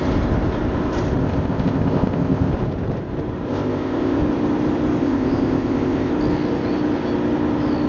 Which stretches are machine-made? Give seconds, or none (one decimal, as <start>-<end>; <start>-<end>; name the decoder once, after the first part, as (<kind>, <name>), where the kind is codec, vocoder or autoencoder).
1.2-2.5 (codec, ZipCodec); 3.5-4.2; 5.0-6.1